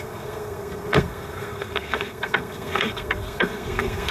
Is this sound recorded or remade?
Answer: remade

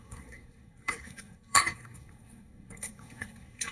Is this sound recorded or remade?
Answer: remade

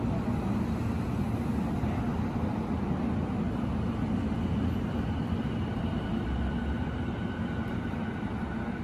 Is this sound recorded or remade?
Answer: recorded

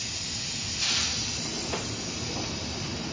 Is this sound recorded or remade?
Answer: recorded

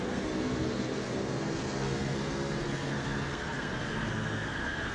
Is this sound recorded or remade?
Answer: remade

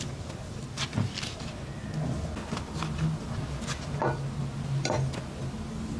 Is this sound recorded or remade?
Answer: recorded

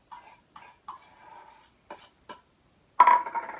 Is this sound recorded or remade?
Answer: recorded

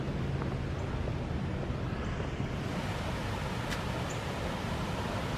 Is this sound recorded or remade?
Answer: recorded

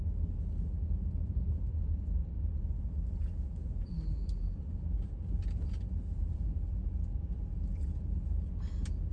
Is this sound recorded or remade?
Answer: recorded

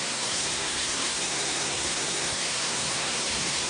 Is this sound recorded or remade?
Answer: remade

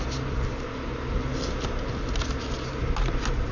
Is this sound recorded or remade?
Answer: recorded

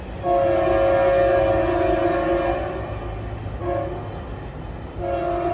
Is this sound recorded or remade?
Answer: recorded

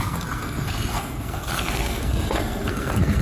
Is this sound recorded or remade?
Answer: remade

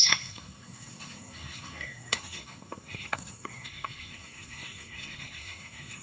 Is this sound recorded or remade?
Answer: remade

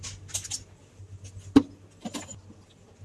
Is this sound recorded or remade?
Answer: recorded